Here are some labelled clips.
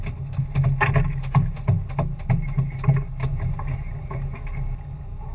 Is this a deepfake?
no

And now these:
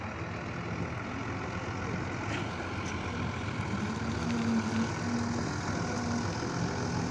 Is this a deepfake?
no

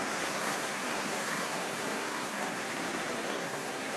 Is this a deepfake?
yes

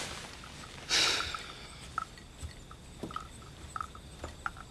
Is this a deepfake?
no